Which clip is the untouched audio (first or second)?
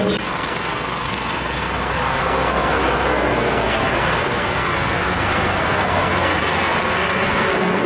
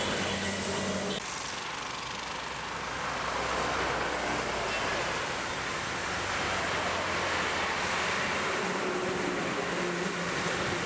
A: second